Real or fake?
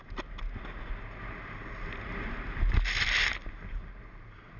real